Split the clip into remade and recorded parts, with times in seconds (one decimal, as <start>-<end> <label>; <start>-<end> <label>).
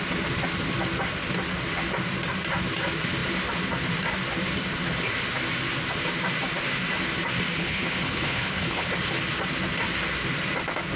0.0-7.6 recorded; 7.6-8.9 remade; 8.9-11.0 recorded